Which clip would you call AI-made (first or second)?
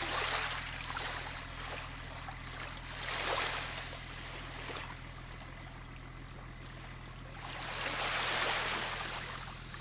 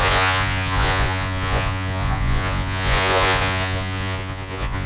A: second